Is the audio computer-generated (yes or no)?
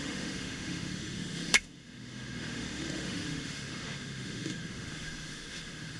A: yes